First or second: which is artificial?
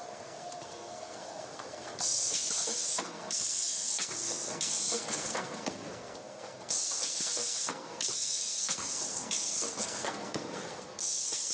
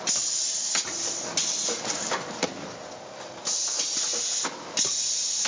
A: first